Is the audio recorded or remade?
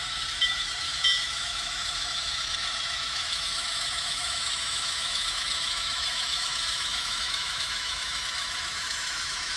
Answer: remade